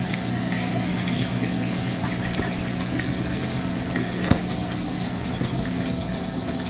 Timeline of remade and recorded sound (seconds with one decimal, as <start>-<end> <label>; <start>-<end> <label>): 0.0-2.0 remade; 2.0-2.7 recorded; 2.7-6.7 remade